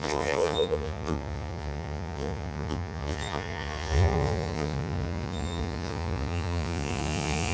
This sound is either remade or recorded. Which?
remade